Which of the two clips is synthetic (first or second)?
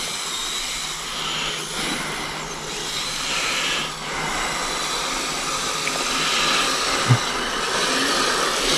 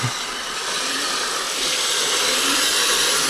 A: second